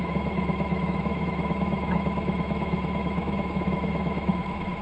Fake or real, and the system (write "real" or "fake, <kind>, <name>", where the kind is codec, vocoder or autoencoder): fake, autoencoder, DAC-VAE